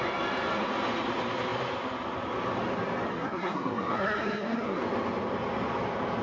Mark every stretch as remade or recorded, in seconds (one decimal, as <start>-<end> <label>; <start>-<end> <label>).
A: 0.0-3.1 recorded; 3.1-4.8 remade; 4.8-6.2 recorded